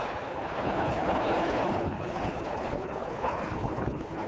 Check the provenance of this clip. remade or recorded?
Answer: remade